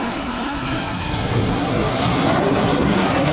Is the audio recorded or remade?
remade